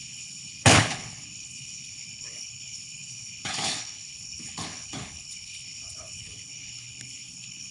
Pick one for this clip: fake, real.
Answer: fake